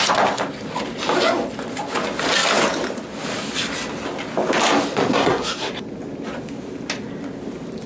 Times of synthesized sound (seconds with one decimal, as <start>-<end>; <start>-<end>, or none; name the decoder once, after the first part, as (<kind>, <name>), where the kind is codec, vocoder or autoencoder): 5.1-5.7 (codec, SNAC)